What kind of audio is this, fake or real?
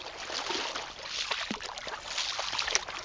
real